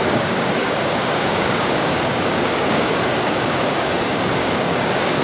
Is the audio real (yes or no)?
no